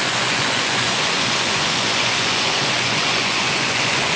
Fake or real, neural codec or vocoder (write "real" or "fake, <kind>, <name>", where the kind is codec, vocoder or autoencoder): fake, vocoder, Vocos